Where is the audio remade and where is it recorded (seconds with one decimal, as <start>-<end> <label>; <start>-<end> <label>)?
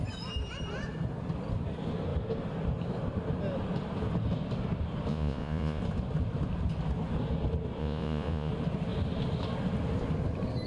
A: 0.0-5.1 recorded; 5.1-5.8 remade; 5.8-7.8 recorded; 7.8-8.5 remade; 8.5-10.7 recorded